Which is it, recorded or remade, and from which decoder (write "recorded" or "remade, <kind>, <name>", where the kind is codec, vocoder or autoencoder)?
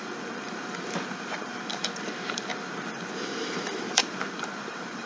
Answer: remade, vocoder, BigVGAN v2